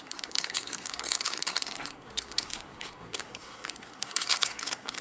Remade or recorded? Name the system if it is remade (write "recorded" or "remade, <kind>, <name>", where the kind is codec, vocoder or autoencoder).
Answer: remade, codec, SNAC